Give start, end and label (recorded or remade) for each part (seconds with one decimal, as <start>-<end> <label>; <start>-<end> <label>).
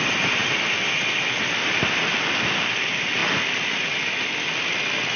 0.0-5.2 recorded